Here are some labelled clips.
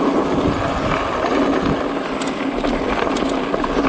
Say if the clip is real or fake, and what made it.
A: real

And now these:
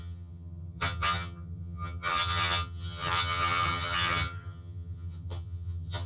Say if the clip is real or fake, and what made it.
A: fake, vocoder, HiFi-GAN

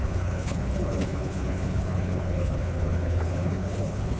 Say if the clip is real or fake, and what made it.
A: fake, codec, HILCodec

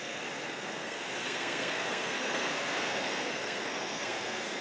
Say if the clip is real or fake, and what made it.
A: fake, codec, SNAC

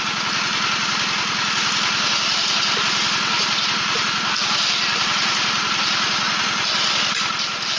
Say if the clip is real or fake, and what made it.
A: real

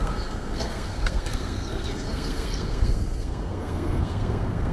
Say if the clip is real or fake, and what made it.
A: fake, codec, SNAC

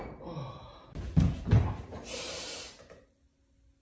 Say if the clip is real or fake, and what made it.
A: real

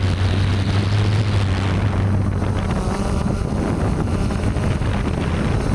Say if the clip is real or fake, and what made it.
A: real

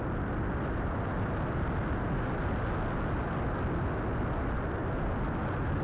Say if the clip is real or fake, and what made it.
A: real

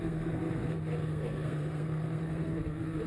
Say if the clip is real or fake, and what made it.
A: fake, codec, SNAC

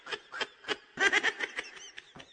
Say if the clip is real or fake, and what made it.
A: real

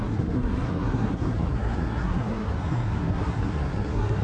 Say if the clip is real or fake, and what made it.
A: fake, codec, SNAC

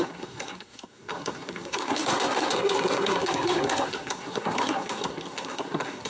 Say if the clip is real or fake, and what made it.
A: fake, codec, SNAC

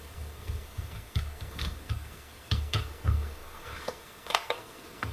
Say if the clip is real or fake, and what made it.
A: fake, codec, SNAC